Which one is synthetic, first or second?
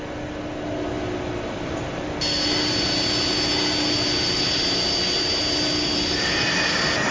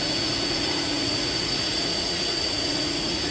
second